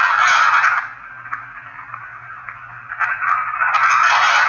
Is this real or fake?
real